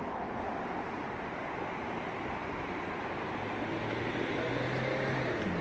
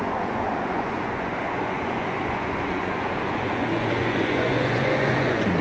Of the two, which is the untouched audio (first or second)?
first